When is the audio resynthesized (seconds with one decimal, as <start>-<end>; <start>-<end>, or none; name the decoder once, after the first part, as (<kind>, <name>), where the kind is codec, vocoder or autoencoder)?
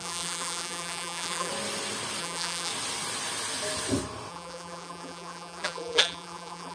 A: 0.0-1.5 (vocoder, BigVGAN v2); 2.2-2.7; 4.3-6.7